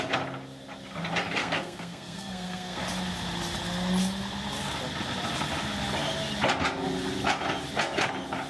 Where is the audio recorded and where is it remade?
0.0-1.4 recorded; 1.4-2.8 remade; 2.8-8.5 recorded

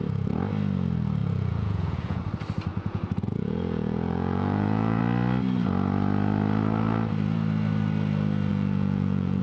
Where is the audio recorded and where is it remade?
0.0-1.2 recorded; 1.2-2.2 remade; 2.2-2.7 recorded; 2.7-5.0 remade; 5.0-8.5 recorded; 8.5-9.4 remade

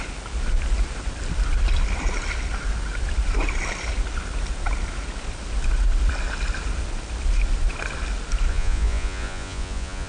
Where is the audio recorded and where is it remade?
0.0-8.5 recorded; 8.5-10.1 remade

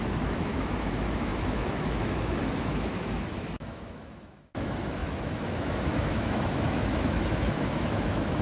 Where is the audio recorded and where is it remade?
0.0-8.4 remade

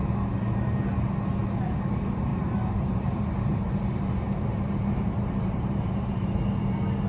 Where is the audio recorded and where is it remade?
0.0-2.3 recorded; 2.3-6.4 remade; 6.4-7.1 recorded